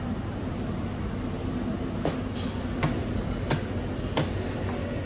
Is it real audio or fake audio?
real